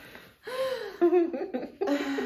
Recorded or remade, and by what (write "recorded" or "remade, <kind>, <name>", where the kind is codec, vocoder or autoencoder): recorded